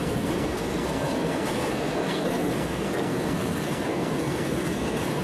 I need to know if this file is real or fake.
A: fake